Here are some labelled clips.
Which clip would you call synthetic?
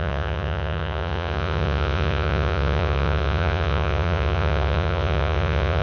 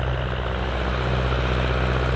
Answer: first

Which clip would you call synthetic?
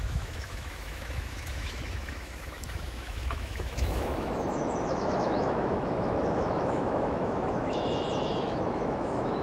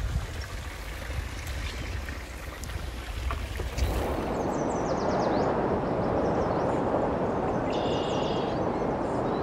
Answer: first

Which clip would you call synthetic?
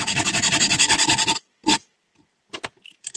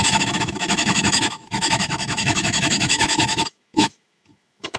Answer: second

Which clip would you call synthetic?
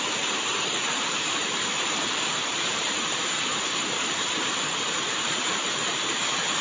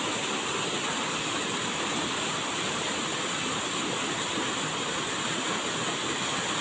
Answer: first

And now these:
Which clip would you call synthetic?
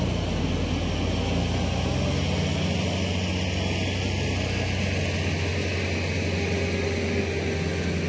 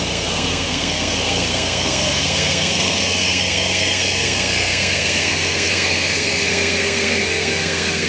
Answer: second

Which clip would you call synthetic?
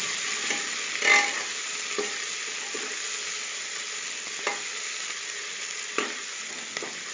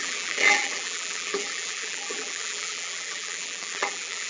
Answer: second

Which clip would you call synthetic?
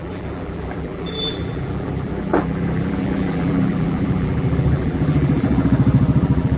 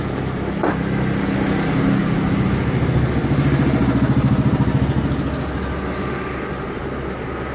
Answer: first